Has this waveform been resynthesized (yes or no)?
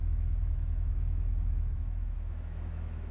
yes